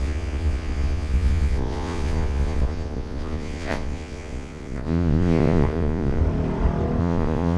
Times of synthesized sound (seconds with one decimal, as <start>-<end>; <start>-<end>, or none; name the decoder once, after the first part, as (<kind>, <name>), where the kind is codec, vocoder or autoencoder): 0.0-6.2 (vocoder, Vocos); 7.0-7.6